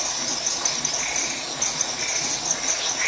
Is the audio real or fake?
real